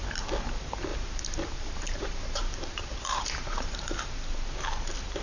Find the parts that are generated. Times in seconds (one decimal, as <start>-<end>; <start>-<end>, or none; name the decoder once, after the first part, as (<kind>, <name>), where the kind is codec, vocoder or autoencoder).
0.9-4.0 (vocoder, BigVGAN v2)